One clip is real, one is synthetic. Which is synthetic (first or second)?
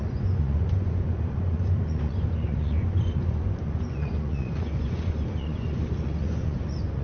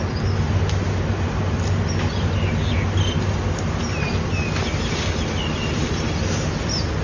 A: first